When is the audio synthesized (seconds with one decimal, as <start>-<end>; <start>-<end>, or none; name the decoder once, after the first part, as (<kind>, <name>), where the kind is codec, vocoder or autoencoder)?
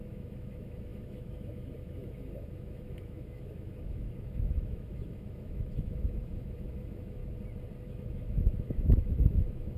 0.0-7.2 (autoencoder, DAC-VAE); 7.9-9.8